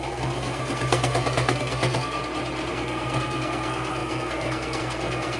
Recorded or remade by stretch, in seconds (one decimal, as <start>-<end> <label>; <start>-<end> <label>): 0.0-2.2 remade; 2.2-2.7 recorded; 2.7-5.4 remade